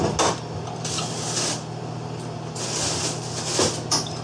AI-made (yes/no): no